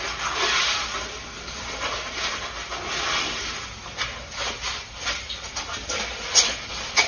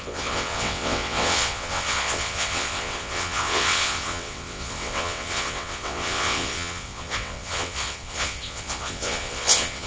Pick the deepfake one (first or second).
second